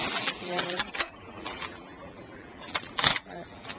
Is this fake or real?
fake